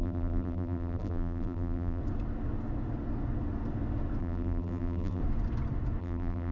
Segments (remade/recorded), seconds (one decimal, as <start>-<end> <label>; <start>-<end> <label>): 0.0-2.0 remade; 2.0-4.2 recorded; 4.2-5.2 remade; 5.2-6.0 recorded; 6.0-6.5 remade